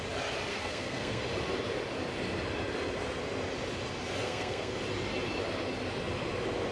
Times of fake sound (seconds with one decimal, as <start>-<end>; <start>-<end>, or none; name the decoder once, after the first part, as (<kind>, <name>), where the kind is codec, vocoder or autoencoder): 0.5-1.2 (codec, SNAC); 4.2-4.8